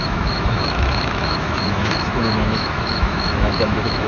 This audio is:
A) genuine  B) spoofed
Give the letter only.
B